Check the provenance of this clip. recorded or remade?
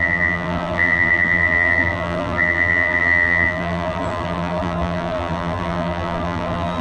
remade